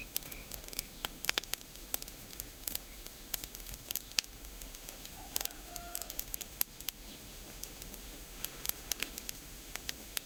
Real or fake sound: fake